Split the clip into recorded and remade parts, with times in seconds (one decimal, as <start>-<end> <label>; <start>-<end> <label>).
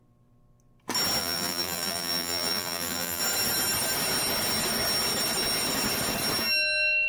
0.0-1.2 recorded; 1.2-3.2 remade; 3.2-7.1 recorded